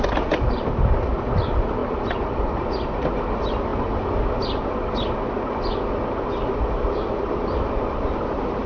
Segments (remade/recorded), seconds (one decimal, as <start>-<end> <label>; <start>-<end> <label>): 0.0-8.7 recorded